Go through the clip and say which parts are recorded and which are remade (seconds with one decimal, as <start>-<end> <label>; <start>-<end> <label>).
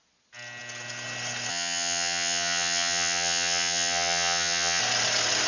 0.0-1.5 recorded; 1.5-4.8 remade; 4.8-5.5 recorded